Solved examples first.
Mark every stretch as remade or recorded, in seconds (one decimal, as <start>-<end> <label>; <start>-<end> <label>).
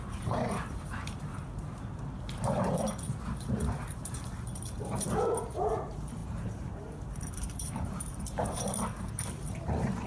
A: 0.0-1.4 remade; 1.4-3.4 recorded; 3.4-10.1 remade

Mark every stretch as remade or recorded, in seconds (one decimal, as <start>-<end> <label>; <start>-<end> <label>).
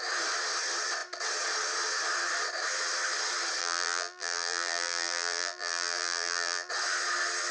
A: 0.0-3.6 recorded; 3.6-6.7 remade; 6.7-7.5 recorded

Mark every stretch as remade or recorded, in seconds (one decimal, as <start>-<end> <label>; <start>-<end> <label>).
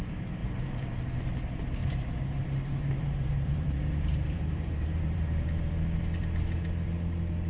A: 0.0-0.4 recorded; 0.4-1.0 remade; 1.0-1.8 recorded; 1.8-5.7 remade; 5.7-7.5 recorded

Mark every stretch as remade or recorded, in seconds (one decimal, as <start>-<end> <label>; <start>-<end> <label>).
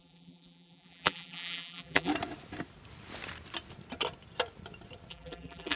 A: 0.0-2.1 remade; 2.1-5.1 recorded; 5.1-5.8 remade